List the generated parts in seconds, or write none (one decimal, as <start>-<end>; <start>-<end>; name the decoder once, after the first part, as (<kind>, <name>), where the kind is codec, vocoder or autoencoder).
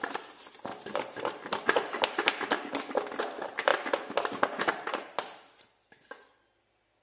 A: none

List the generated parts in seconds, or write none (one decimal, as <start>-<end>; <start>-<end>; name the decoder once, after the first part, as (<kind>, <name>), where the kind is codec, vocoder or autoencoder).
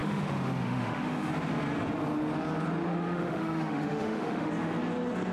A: 0.0-1.3 (autoencoder, DAC-VAE); 2.9-4.5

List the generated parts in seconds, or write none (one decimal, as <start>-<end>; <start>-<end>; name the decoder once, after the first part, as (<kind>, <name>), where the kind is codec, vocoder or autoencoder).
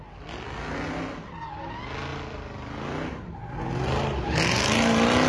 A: 2.1-3.6 (vocoder, BigVGAN v2)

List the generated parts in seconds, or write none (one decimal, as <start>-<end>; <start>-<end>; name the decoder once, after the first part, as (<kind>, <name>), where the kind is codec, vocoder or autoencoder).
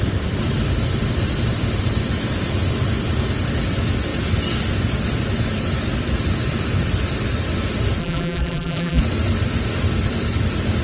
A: 8.0-9.0 (vocoder, BigVGAN v2)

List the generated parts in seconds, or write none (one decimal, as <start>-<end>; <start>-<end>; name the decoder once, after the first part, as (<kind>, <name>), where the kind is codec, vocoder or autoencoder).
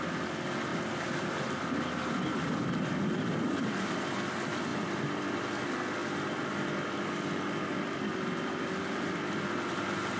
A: 0.7-3.9 (vocoder, BigVGAN v2); 4.7-5.6; 6.0-7.1; 7.7-8.8